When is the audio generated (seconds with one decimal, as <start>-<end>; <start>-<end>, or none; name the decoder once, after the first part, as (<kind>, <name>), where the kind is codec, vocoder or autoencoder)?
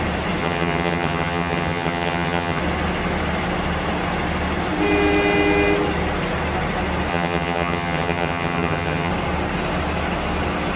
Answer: 0.4-2.6 (vocoder, HiFi-GAN); 7.1-9.1